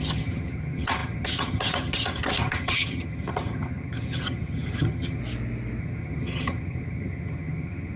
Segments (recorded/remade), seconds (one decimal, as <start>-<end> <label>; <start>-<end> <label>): 0.0-5.2 remade; 5.2-5.8 recorded; 5.8-8.0 remade